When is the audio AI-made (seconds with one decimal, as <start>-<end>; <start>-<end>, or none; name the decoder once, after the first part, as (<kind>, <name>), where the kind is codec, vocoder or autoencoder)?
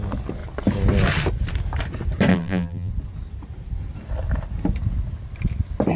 2.3-2.9 (vocoder, BigVGAN v2)